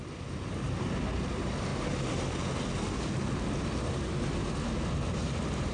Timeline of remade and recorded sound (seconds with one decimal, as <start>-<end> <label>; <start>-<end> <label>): 0.0-5.7 recorded